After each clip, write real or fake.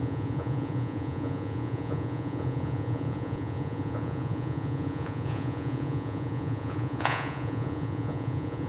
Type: fake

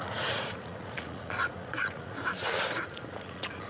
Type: fake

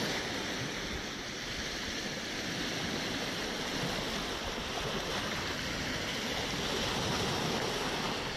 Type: real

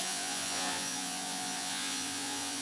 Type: fake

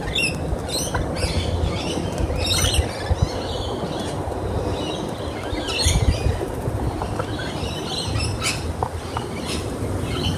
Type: real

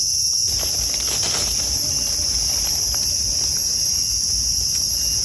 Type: real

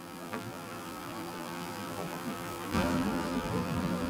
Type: fake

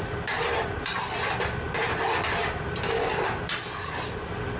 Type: real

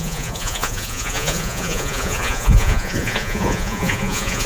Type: fake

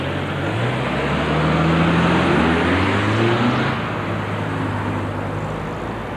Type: real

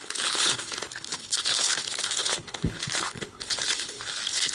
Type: fake